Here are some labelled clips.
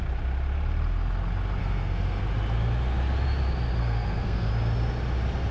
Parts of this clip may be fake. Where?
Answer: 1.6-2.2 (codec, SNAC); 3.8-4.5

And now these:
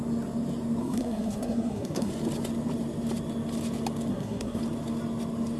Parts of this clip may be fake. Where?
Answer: 0.8-2.1 (codec, SNAC); 4.1-4.6

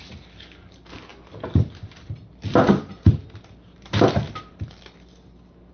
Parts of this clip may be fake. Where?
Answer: none